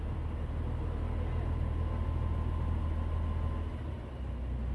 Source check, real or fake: real